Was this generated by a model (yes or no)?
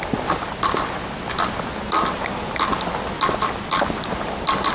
no